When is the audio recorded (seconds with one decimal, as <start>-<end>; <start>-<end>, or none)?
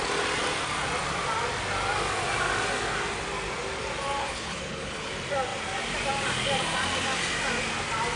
0.0-4.2; 5.1-8.2